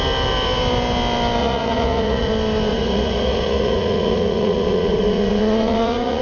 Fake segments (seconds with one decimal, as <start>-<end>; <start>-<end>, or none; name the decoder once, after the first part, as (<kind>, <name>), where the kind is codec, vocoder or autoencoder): 1.4-2.3 (vocoder, Vocos); 2.7-6.2